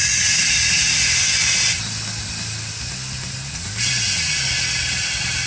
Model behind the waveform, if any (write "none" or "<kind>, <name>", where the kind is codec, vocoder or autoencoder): none